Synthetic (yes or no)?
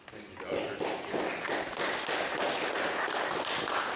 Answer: no